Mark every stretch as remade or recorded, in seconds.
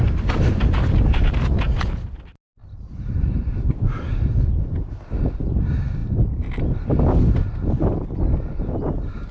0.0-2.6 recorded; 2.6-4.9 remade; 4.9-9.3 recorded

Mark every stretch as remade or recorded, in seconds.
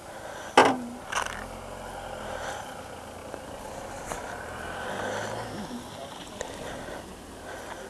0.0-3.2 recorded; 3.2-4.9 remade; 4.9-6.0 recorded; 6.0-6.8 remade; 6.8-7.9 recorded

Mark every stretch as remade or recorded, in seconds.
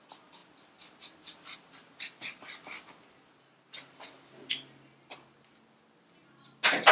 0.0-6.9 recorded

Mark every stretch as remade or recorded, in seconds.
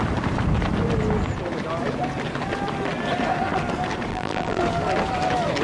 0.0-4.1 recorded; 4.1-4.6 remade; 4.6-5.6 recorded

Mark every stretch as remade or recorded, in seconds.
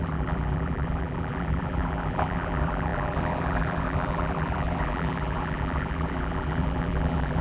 0.0-7.4 remade